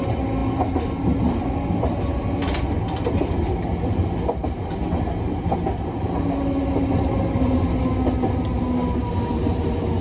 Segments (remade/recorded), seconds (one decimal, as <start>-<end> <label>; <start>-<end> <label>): 0.0-10.0 recorded